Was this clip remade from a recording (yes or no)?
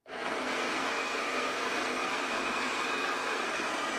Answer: yes